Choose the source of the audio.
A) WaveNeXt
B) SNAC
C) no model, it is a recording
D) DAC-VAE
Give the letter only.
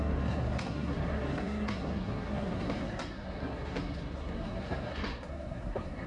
B